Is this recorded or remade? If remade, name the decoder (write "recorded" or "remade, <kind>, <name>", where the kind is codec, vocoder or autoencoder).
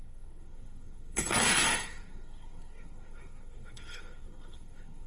remade, codec, SNAC